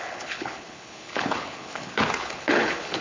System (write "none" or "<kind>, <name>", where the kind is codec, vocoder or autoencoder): codec, HILCodec